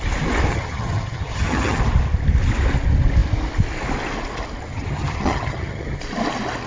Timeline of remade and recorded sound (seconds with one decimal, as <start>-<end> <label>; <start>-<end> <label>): 0.0-0.5 recorded; 0.5-1.8 remade; 1.8-4.7 recorded; 4.7-6.0 remade; 6.0-6.7 recorded